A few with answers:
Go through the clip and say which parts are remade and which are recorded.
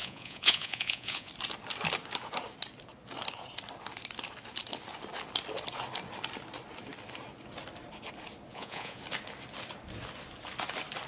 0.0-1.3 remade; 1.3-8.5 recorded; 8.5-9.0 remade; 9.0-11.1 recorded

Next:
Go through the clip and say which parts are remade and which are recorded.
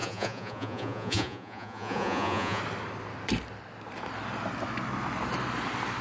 0.0-2.6 remade; 2.6-6.0 recorded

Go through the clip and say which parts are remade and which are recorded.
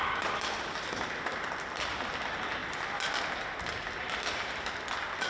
0.0-5.3 recorded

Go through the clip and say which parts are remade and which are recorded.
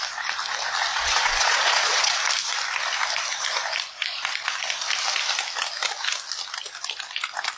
0.0-0.9 recorded; 0.9-2.2 remade; 2.2-7.6 recorded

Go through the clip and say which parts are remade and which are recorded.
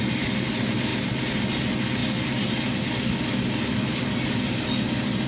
0.0-5.3 recorded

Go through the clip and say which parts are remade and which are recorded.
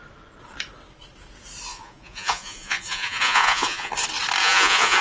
0.0-1.7 recorded; 1.7-3.9 remade; 3.9-4.4 recorded; 4.4-5.0 remade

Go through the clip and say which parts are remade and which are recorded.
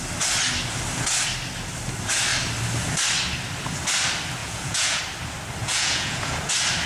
0.0-4.4 recorded; 4.4-5.0 remade; 5.0-5.6 recorded; 5.6-6.4 remade; 6.4-6.9 recorded